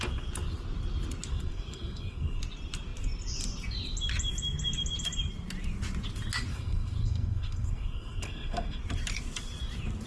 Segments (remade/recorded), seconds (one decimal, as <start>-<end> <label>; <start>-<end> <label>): 0.0-1.3 recorded; 1.3-2.4 remade; 2.4-6.5 recorded; 6.5-8.8 remade; 8.8-10.1 recorded